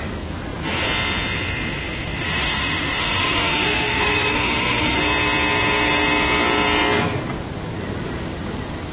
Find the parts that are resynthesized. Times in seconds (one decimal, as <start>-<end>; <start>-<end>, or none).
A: 2.2-5.0